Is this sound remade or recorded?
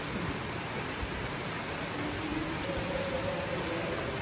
recorded